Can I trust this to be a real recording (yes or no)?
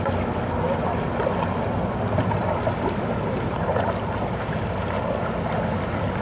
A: yes